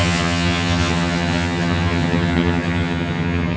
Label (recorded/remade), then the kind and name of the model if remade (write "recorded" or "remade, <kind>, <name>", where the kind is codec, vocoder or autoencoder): remade, vocoder, HiFi-GAN